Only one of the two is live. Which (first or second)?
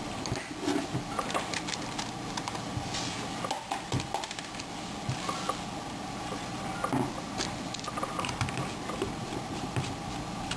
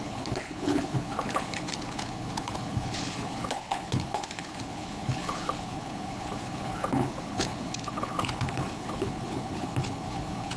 first